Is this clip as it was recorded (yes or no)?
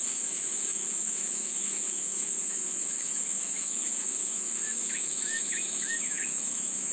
no